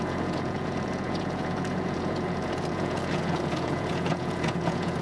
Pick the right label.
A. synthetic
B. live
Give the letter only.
A